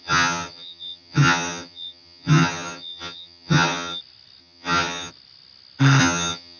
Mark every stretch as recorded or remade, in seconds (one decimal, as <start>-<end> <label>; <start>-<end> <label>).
0.0-4.0 remade; 4.0-4.4 recorded; 4.4-5.1 remade; 5.1-6.0 recorded; 6.0-6.6 remade